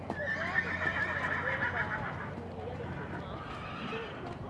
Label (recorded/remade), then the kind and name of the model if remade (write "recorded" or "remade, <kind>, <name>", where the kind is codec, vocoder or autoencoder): recorded